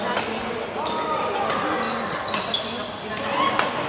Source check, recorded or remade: recorded